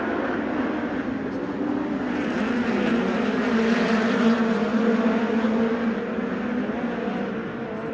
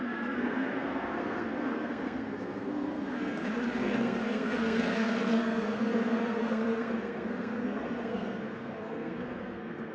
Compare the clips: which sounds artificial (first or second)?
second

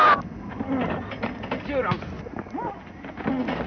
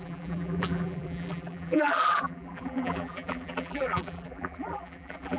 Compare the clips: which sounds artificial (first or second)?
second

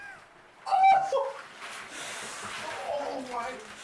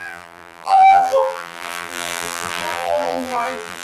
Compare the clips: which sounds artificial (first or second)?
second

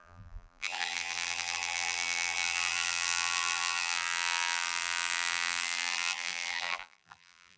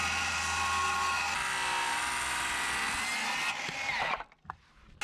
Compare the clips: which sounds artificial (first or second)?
first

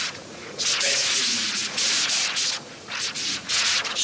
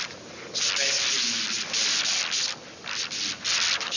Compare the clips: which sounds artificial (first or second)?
first